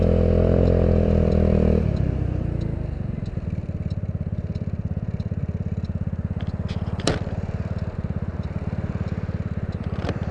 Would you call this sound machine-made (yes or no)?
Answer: yes